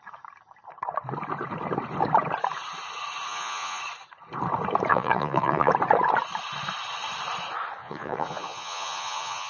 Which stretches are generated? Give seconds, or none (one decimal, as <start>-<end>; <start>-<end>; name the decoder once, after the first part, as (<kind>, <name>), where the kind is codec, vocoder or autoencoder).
3.3-3.8 (vocoder, Vocos); 4.9-5.7; 7.8-9.5